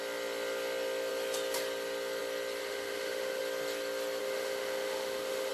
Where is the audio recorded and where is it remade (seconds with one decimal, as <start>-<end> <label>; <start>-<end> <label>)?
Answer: 0.0-2.6 recorded; 2.6-3.4 remade; 3.4-4.2 recorded; 4.2-5.5 remade